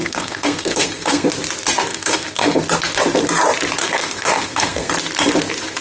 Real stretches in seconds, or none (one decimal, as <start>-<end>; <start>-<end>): 1.3-1.9; 2.6-3.8; 4.9-5.8